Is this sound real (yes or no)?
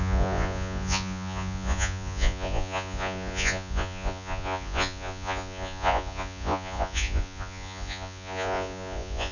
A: no